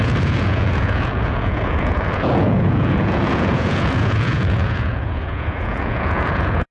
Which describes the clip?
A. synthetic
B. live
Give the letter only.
A